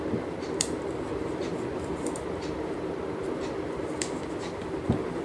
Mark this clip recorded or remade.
remade